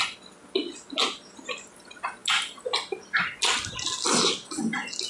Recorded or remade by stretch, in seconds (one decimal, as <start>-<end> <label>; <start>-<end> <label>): 0.0-5.1 recorded